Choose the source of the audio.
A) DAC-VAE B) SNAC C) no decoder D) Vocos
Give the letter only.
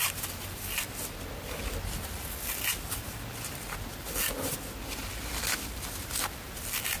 C